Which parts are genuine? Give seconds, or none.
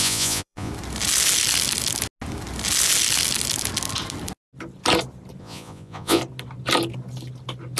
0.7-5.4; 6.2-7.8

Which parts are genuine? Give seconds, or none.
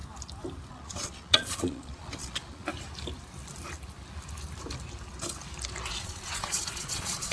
0.0-0.7; 2.7-5.9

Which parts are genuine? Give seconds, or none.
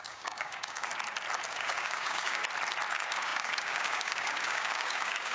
0.9-1.5; 2.4-2.9